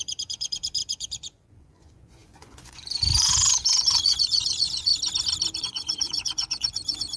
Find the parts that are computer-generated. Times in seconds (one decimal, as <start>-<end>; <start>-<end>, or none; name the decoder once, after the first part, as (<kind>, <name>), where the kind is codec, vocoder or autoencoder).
0.0-4.9 (vocoder, Vocos); 5.6-7.2